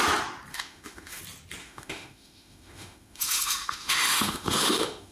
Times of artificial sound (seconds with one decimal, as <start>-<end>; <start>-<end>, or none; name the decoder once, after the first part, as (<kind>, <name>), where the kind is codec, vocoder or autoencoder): 0.5-1.2 (autoencoder, DAC-VAE); 1.6-5.1

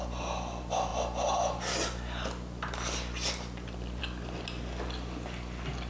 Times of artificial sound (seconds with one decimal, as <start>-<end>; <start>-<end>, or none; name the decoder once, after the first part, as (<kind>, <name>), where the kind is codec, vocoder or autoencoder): none

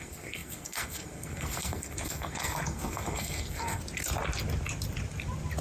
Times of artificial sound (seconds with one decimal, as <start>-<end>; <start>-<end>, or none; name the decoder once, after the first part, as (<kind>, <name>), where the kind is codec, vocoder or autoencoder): 0.0-3.8 (codec, SNAC)

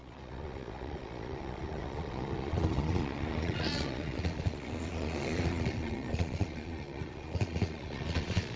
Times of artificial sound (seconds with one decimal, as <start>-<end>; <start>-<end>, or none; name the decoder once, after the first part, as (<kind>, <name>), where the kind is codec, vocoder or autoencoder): 0.0-8.6 (vocoder, Vocos)

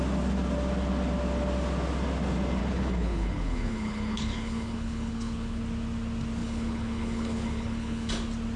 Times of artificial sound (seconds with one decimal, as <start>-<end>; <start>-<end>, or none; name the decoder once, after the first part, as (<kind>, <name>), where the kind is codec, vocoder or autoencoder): 2.6-5.6 (codec, HILCodec); 6.4-8.1

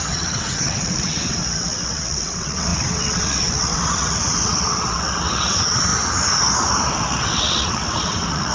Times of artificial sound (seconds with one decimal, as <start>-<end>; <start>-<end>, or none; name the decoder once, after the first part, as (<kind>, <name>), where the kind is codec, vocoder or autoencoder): 0.0-5.9 (vocoder, WaveNeXt); 6.9-8.5

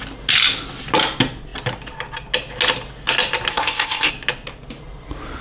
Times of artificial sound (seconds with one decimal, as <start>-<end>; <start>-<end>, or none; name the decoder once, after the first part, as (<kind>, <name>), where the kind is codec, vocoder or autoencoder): 3.5-4.1 (codec, ZipCodec)